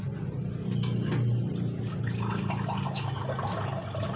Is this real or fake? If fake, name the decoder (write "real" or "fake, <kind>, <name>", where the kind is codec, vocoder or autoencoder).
real